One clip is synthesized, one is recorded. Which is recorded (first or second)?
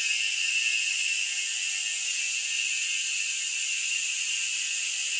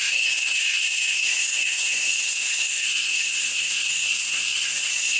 first